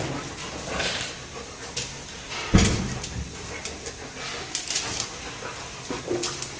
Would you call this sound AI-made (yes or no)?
no